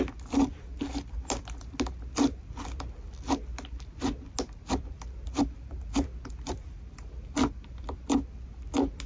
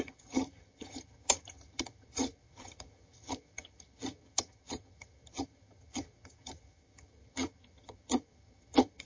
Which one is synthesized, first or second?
second